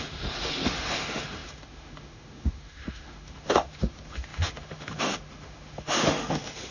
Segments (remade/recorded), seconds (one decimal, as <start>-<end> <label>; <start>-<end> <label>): 0.0-6.7 remade